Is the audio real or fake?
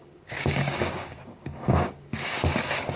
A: fake